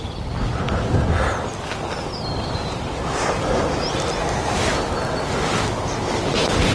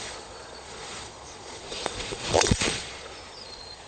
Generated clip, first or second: second